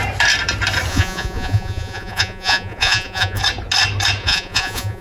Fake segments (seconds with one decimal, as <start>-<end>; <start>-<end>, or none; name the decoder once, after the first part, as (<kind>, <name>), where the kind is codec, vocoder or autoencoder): 0.9-3.4 (vocoder, Vocos); 4.2-5.0